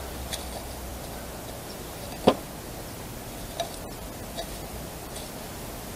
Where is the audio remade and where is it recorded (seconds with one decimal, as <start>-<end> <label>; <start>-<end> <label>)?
0.0-6.0 recorded